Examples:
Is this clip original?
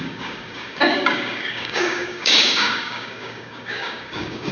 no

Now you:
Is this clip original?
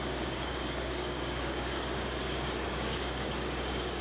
no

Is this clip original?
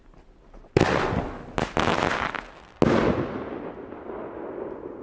yes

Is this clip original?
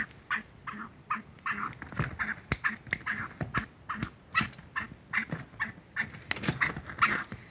yes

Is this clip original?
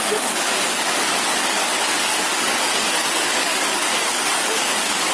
no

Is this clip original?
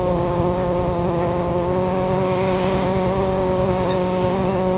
no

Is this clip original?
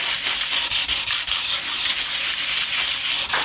yes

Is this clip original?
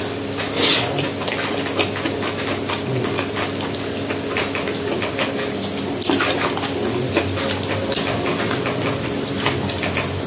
yes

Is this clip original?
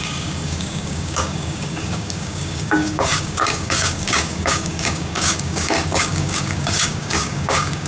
no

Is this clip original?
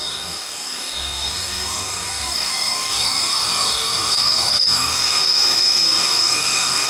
no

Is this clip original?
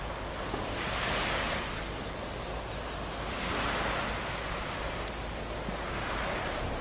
yes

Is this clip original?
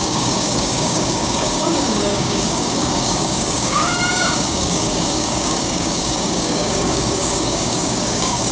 no